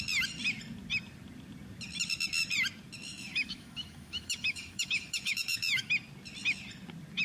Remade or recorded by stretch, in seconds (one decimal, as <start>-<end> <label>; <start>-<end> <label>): 0.0-3.1 recorded; 3.1-5.9 remade; 5.9-7.2 recorded